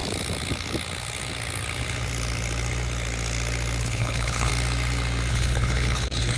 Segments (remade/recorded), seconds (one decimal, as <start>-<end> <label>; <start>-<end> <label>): 0.0-3.8 recorded; 3.8-4.5 remade; 4.5-5.3 recorded; 5.3-6.4 remade